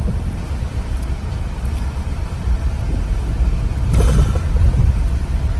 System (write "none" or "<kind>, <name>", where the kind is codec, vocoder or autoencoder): none